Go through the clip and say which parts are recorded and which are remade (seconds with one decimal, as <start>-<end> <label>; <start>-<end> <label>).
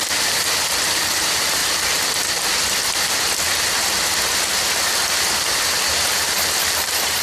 0.0-1.6 remade; 1.6-5.9 recorded; 5.9-7.2 remade